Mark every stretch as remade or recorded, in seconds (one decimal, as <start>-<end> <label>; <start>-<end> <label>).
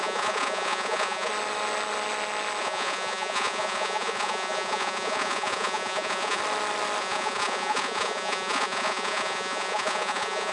0.0-1.3 remade; 1.3-2.6 recorded; 2.6-6.4 remade; 6.4-7.0 recorded; 7.0-10.5 remade